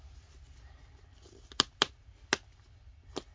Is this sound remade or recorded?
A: recorded